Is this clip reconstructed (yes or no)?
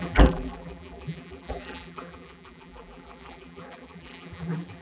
yes